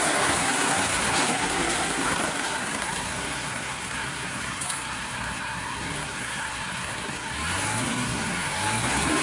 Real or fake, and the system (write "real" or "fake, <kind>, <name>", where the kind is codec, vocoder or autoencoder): fake, codec, SNAC